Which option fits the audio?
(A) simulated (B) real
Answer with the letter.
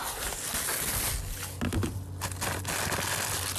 B